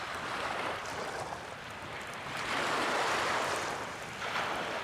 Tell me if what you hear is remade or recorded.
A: recorded